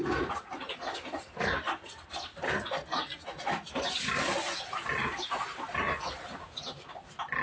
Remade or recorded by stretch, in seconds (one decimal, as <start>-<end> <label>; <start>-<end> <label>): 0.0-5.0 recorded; 5.0-5.6 remade; 5.6-7.4 recorded